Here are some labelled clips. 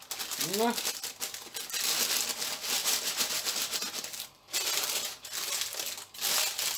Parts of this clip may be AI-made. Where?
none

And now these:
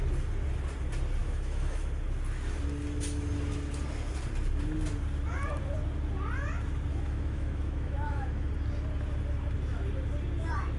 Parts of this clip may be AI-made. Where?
1.2-1.8; 6.9-8.5

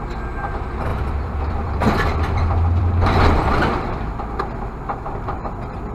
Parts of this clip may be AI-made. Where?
0.9-4.4

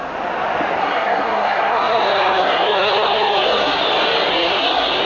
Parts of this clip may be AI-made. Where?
0.8-3.8; 4.3-5.0

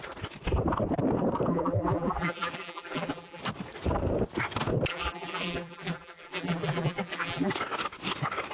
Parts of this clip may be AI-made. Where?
1.5-3.4; 4.9-7.5